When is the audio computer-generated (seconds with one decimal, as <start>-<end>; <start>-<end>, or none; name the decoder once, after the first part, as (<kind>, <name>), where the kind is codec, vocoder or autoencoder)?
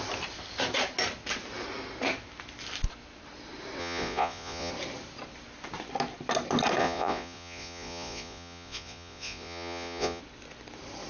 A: 3.8-4.7 (vocoder, Vocos); 6.8-10.2